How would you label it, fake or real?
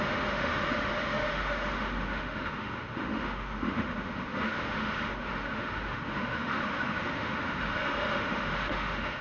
fake